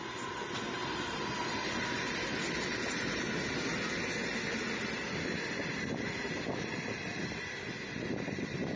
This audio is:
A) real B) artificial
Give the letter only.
A